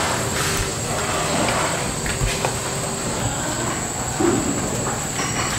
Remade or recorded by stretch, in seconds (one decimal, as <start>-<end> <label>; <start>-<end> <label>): 0.0-0.7 remade; 0.7-1.5 recorded; 1.5-2.1 remade; 2.1-5.6 recorded